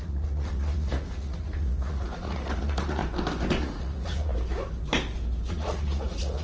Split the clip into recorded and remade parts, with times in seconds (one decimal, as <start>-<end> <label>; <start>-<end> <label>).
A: 0.0-3.0 remade; 3.0-3.6 recorded; 3.6-4.3 remade; 4.3-5.5 recorded; 5.5-6.4 remade